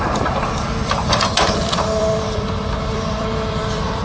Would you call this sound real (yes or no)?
no